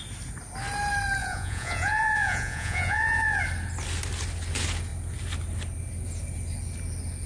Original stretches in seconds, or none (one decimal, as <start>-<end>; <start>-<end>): 0.0-1.2; 3.4-7.3